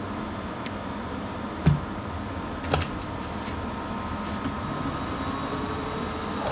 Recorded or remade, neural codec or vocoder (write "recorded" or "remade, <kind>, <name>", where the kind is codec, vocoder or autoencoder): recorded